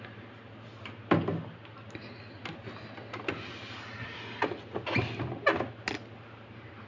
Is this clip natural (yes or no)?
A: yes